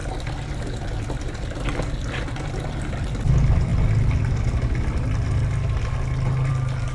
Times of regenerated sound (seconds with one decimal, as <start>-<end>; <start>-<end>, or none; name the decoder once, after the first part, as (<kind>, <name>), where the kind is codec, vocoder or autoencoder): none